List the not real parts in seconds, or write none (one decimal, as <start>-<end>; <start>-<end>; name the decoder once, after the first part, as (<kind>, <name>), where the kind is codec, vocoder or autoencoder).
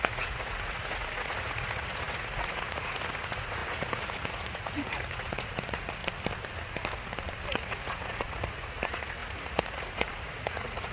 0.0-6.0 (vocoder, Vocos); 7.5-10.9